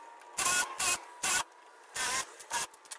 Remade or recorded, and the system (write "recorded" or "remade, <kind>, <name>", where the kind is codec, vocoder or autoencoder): recorded